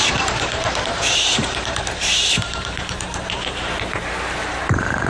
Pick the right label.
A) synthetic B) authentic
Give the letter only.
A